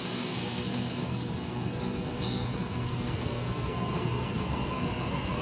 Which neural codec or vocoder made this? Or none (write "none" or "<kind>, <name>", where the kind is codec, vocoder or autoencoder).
codec, SNAC